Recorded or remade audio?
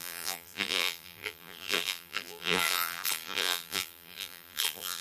remade